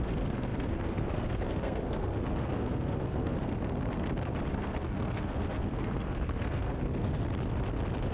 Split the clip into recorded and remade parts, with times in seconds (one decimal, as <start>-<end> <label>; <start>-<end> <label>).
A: 0.0-3.5 remade; 3.5-4.5 recorded; 4.5-7.2 remade; 7.2-8.1 recorded